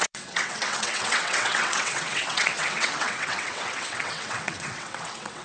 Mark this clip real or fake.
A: fake